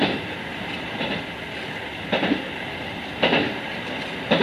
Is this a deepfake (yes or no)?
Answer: no